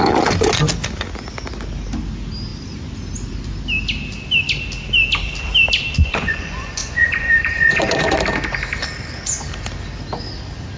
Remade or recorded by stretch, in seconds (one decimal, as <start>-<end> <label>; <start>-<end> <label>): 0.0-6.0 recorded; 6.0-8.2 remade; 8.2-10.8 recorded